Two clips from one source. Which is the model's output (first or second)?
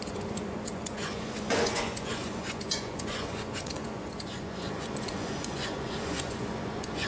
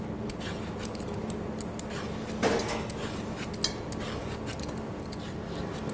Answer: first